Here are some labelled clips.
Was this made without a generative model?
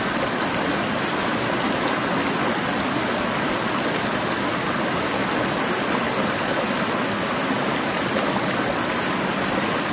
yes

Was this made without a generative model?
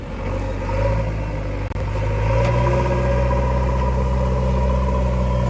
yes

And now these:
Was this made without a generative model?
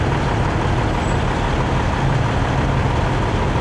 yes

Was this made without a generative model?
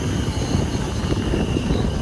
yes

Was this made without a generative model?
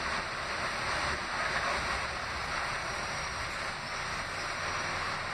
yes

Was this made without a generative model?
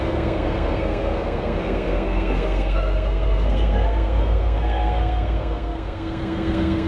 no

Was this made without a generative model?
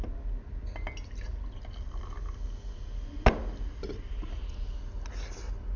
yes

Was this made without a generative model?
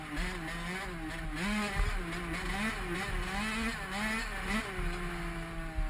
yes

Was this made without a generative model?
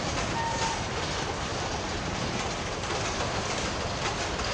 yes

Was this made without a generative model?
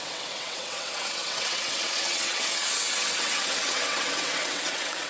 no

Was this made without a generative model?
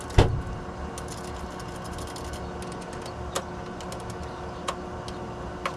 yes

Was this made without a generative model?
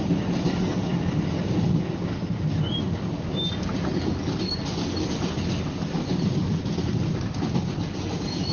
yes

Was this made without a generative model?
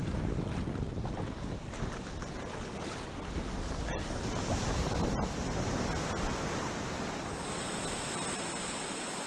yes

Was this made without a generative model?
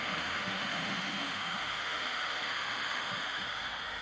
no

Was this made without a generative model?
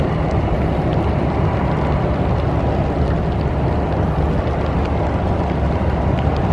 yes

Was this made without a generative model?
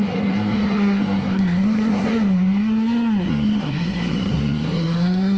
no